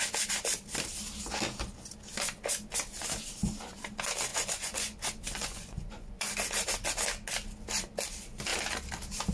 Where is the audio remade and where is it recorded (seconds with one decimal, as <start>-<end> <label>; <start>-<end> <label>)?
0.0-4.3 recorded; 4.3-6.3 remade; 6.3-9.3 recorded